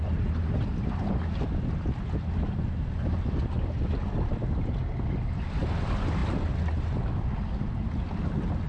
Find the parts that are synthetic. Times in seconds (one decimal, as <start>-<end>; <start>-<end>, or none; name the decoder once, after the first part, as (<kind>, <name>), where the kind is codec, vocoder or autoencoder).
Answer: none